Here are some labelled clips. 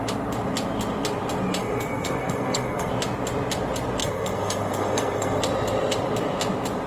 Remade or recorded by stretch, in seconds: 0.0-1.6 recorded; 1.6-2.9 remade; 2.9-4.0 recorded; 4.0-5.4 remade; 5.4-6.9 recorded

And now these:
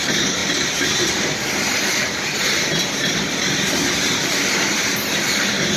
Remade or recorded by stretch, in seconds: 0.0-0.4 remade; 0.4-3.9 recorded; 3.9-5.8 remade

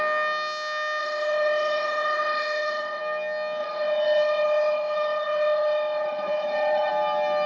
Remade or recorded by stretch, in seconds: 0.0-1.0 recorded; 1.0-3.0 remade; 3.0-3.6 recorded; 3.6-6.9 remade; 6.9-7.5 recorded

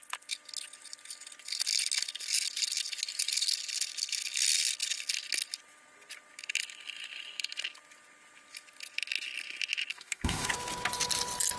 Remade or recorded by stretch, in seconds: 0.0-9.9 recorded; 9.9-10.5 remade; 10.5-11.6 recorded